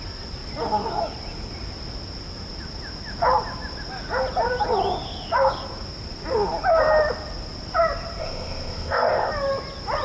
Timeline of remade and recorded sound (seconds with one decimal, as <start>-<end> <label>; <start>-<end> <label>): 0.0-8.2 recorded; 8.2-9.3 remade; 9.3-10.0 recorded